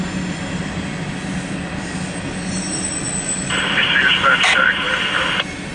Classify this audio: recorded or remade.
recorded